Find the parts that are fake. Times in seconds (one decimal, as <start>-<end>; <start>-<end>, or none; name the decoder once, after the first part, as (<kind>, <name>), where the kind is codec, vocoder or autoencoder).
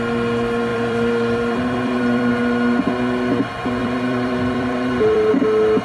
0.7-2.3 (vocoder, BigVGAN v2); 3.8-5.3